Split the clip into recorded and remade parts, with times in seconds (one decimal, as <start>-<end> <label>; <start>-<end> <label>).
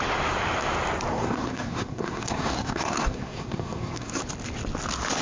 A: 0.0-1.1 recorded; 1.1-4.2 remade; 4.2-5.2 recorded